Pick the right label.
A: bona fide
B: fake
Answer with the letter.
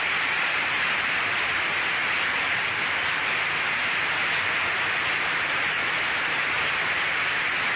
B